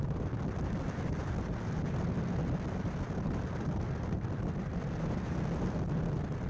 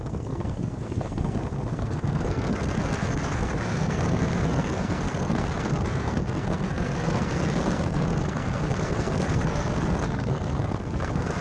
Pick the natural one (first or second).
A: first